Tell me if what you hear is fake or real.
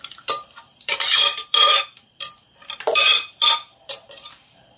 fake